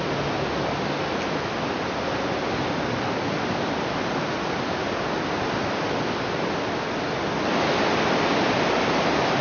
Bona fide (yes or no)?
yes